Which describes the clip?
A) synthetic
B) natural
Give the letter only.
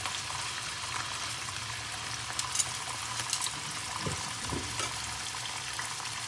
B